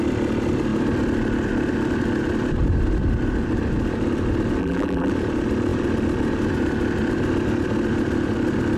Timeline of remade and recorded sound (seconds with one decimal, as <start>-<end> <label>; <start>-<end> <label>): 0.0-4.6 recorded; 4.6-5.1 remade; 5.1-8.8 recorded